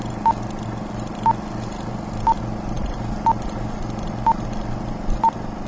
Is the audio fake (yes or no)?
no